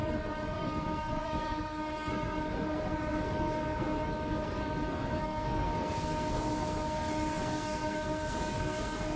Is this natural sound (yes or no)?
no